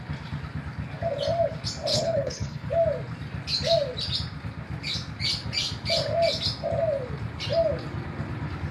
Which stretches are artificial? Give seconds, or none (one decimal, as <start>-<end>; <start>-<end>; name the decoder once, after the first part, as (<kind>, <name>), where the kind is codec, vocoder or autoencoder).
1.9-2.7 (codec, HILCodec)